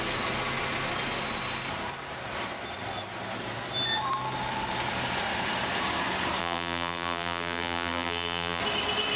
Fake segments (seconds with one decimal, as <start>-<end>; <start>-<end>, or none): 6.4-8.6